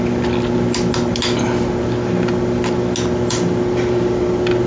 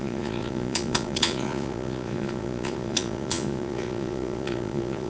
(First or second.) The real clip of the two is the first